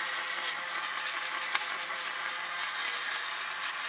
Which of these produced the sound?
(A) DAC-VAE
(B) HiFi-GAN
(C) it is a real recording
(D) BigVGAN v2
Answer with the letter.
C